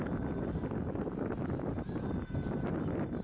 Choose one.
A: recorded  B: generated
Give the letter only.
A